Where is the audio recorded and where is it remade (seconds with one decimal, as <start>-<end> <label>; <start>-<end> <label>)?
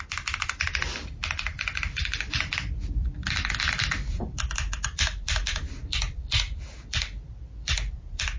0.0-8.4 remade